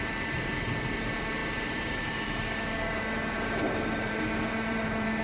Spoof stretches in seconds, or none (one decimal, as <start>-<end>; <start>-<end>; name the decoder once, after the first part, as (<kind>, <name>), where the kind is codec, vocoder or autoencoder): 0.0-5.2 (vocoder, BigVGAN v2)

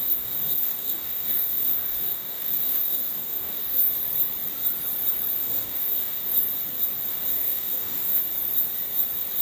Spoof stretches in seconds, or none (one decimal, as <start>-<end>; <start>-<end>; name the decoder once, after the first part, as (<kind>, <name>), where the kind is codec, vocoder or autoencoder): 0.0-3.9 (codec, DAC); 5.4-6.3; 7.1-8.2